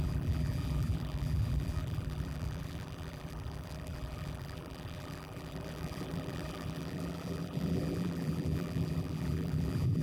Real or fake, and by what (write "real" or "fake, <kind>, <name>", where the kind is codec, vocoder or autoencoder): fake, vocoder, BigVGAN v2